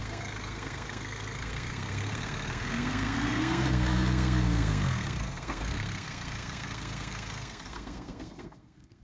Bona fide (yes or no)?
no